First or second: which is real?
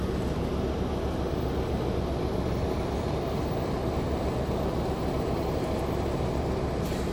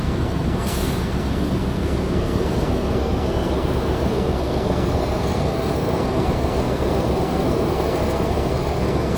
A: first